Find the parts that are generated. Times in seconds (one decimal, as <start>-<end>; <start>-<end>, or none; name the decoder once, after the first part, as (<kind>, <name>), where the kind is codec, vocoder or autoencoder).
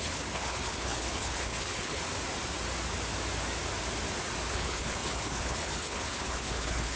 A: 0.0-2.0 (codec, HILCodec); 4.5-7.0